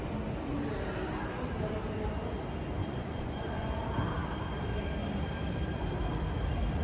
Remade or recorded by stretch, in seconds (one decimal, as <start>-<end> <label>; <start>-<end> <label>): 0.0-2.8 recorded; 2.8-3.7 remade; 3.7-6.8 recorded